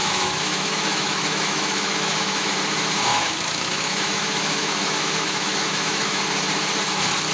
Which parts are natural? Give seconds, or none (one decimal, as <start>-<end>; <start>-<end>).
2.5-3.1; 6.2-7.3